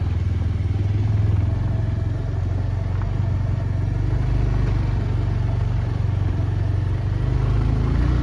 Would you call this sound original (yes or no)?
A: yes